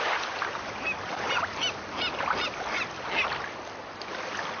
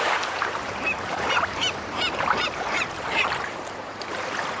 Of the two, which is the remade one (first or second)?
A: second